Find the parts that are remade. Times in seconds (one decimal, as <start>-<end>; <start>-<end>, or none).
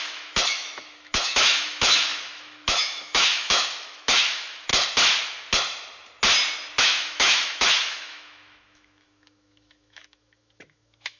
0.0-4.7; 6.8-11.2